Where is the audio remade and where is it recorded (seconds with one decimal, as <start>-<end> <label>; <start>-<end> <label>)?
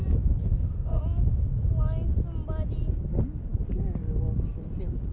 0.0-0.4 recorded; 0.4-1.0 remade; 1.0-5.1 recorded